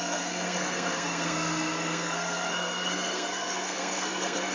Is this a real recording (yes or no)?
no